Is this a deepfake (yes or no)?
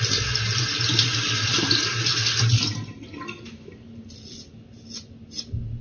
no